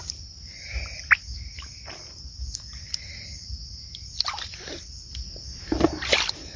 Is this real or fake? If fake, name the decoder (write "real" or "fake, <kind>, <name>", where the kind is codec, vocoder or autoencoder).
real